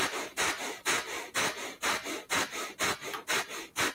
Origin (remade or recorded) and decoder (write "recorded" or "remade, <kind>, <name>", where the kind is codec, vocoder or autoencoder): recorded